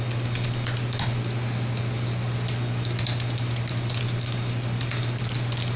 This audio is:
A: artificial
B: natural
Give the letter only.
B